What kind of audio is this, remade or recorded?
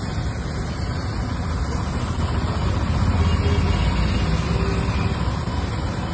recorded